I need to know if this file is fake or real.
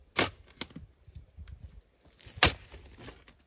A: real